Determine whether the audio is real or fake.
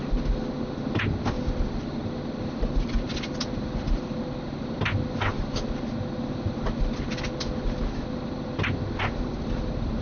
real